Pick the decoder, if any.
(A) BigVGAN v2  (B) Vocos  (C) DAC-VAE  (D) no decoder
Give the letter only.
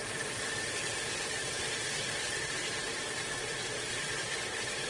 A